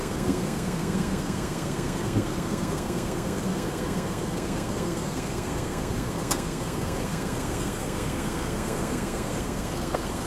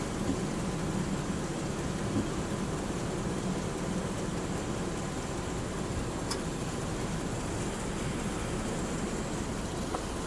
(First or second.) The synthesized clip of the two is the first